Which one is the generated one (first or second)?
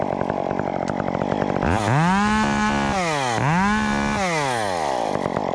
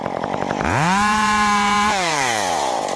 second